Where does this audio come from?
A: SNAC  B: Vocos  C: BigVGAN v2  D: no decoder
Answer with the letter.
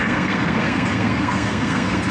A